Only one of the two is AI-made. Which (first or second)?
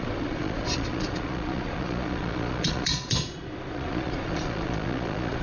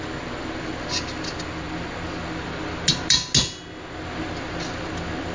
first